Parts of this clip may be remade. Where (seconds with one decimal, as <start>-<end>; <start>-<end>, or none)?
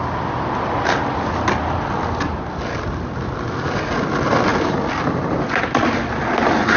none